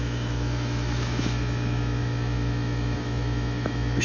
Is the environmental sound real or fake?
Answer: fake